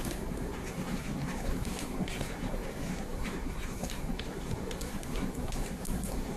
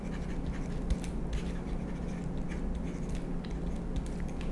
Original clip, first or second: second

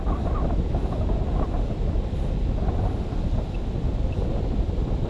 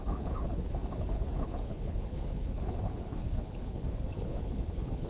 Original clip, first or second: first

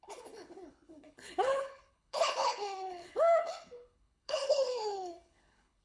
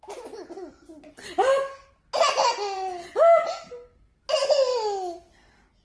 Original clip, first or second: second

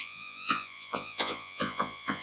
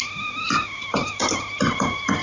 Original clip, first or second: second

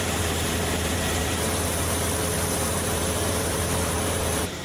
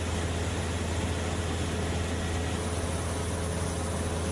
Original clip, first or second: second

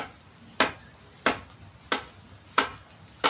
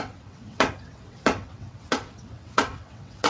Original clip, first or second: first